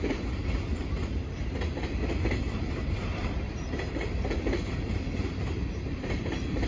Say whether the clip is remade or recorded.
remade